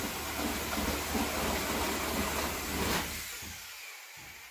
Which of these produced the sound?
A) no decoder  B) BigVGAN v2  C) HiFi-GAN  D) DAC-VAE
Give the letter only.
A